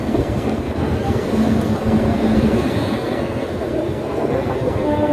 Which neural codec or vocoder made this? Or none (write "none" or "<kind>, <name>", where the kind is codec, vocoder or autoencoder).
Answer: codec, SNAC